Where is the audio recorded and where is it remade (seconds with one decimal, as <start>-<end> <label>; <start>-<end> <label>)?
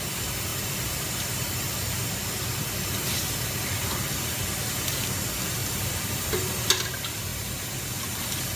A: 0.0-0.5 recorded; 0.5-4.4 remade; 4.4-5.6 recorded; 5.6-6.2 remade; 6.2-8.6 recorded